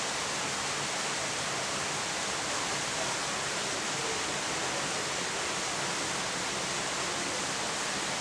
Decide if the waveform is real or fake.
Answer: real